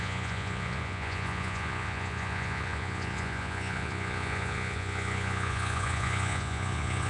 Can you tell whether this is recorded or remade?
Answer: remade